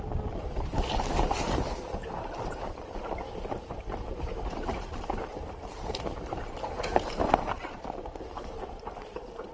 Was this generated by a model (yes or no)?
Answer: yes